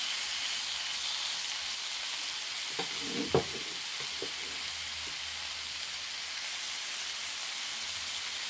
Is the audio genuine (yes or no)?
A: yes